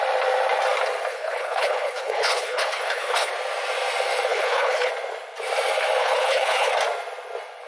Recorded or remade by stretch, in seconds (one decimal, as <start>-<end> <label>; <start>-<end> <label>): 0.0-1.1 recorded; 1.1-3.3 remade; 3.3-4.3 recorded; 4.3-4.9 remade; 4.9-6.0 recorded; 6.0-6.7 remade; 6.7-7.7 recorded